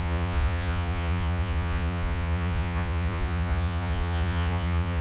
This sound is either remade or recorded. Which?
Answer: remade